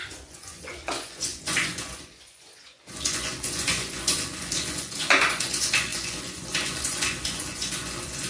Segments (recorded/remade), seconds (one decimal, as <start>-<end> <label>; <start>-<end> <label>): 0.0-8.3 remade